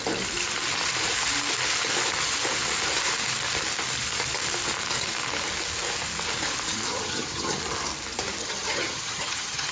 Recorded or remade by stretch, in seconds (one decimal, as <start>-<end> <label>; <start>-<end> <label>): 0.0-6.9 recorded; 6.9-7.6 remade; 7.6-8.4 recorded; 8.4-9.7 remade